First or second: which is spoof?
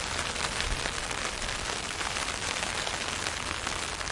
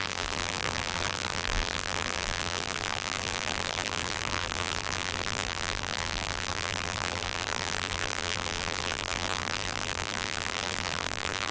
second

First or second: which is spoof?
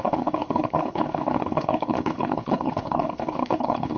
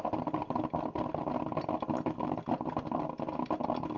first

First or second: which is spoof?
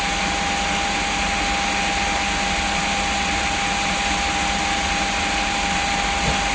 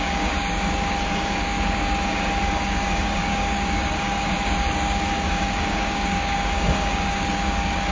second